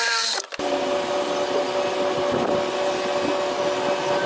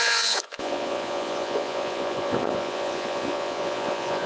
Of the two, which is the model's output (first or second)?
second